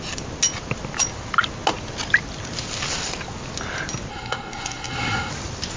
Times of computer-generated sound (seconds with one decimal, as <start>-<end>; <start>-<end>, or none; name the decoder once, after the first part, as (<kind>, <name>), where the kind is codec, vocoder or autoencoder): 4.1-5.3 (codec, SNAC)